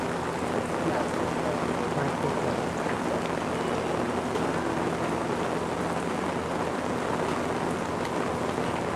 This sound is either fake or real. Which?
real